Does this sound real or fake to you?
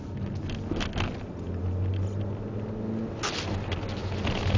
real